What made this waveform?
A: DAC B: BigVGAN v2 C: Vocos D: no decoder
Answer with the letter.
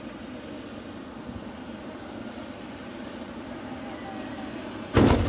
D